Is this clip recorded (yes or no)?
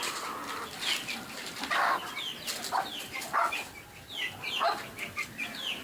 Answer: yes